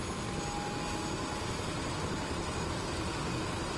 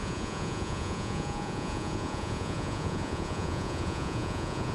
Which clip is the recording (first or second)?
first